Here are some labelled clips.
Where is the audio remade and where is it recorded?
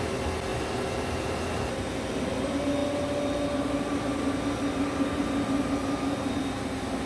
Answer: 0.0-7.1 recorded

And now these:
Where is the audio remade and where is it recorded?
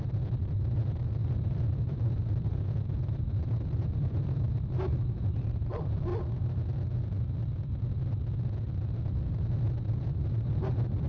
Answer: 0.0-6.1 remade; 6.1-9.6 recorded; 9.6-11.1 remade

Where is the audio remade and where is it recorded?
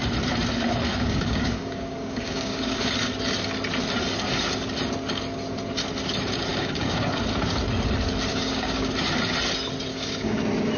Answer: 0.0-0.9 recorded; 0.9-2.9 remade; 2.9-6.5 recorded; 6.5-7.2 remade; 7.2-8.3 recorded; 8.3-8.9 remade; 8.9-9.9 recorded; 9.9-10.4 remade; 10.4-10.8 recorded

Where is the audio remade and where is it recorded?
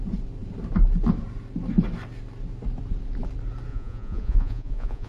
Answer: 0.0-3.7 recorded; 3.7-5.1 remade